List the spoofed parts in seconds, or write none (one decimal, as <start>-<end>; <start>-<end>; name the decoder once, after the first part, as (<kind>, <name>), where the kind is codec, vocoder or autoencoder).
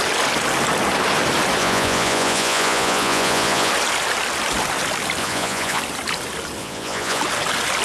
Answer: 1.6-3.7 (vocoder, Vocos); 5.2-5.8; 6.6-7.2